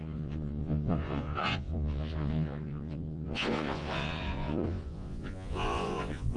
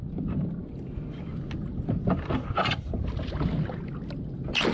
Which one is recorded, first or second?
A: second